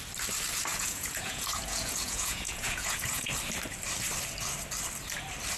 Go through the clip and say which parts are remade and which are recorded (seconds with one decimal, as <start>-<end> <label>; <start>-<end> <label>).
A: 0.0-0.7 recorded; 0.7-3.3 remade; 3.3-5.6 recorded